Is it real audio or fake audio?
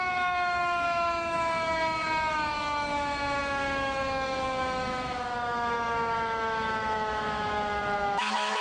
fake